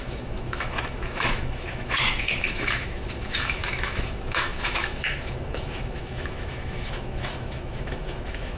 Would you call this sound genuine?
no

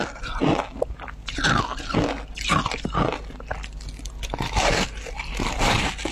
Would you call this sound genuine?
yes